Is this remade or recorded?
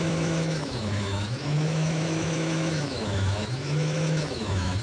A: remade